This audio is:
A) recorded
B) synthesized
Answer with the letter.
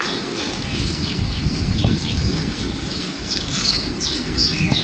B